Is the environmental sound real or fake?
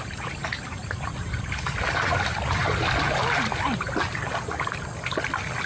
real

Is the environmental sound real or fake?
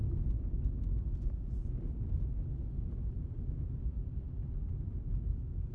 real